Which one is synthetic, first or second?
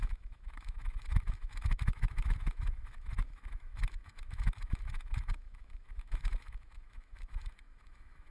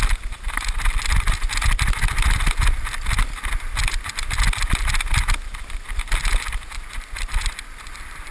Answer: first